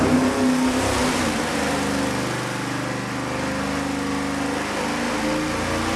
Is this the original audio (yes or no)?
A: yes